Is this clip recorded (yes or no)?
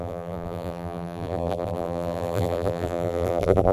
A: no